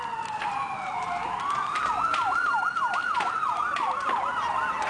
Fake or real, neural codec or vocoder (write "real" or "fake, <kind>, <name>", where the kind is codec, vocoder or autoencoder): real